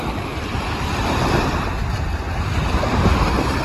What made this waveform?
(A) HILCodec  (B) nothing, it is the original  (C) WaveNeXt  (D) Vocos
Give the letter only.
B